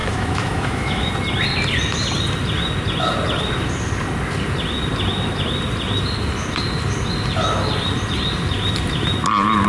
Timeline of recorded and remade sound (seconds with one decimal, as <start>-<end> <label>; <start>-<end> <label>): 0.0-1.1 remade; 1.1-9.7 recorded